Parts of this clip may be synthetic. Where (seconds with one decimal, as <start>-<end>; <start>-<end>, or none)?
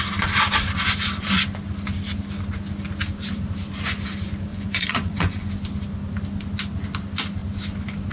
4.5-5.5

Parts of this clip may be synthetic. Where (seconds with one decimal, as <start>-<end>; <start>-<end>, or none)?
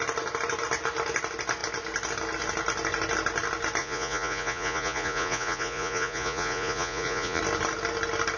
3.8-7.4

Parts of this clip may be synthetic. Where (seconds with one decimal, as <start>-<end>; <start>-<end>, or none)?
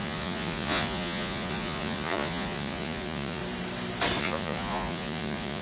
0.0-3.4; 4.2-5.6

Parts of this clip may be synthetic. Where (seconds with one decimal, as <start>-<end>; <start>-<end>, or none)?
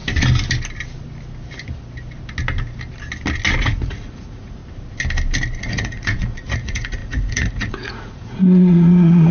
3.6-4.6; 5.6-9.3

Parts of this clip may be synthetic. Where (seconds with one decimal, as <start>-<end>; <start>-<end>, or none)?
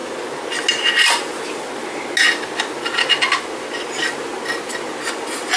none